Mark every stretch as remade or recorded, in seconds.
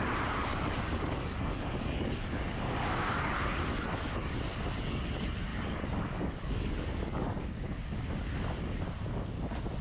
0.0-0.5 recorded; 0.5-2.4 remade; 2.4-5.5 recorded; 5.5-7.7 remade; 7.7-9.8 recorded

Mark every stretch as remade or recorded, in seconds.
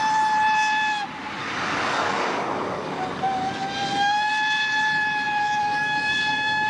0.0-1.4 recorded; 1.4-4.3 remade; 4.3-5.6 recorded; 5.6-6.7 remade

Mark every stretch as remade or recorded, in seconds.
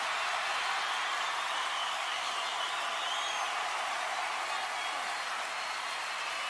0.0-1.8 recorded; 1.8-2.3 remade; 2.3-6.5 recorded